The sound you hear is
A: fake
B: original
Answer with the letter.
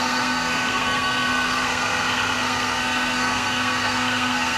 A